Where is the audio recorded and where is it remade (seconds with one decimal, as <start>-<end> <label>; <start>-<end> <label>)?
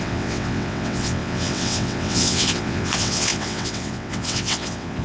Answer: 0.0-5.0 remade